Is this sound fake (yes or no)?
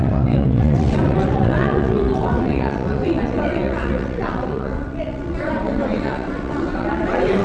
yes